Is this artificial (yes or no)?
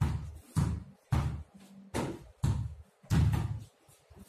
no